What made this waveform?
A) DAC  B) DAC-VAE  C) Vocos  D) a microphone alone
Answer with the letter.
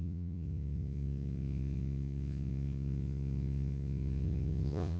C